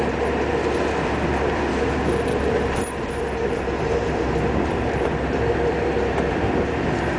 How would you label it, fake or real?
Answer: fake